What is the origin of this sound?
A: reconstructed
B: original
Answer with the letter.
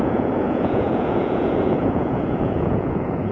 A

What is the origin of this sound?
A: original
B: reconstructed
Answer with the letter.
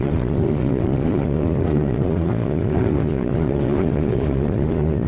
B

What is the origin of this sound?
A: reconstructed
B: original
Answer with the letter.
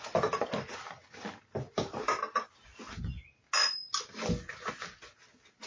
B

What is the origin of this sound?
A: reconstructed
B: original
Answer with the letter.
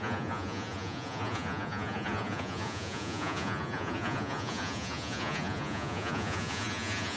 A